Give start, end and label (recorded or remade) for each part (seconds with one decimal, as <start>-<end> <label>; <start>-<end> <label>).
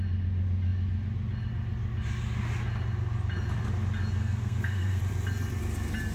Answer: 0.0-4.2 recorded; 4.2-5.0 remade; 5.0-6.1 recorded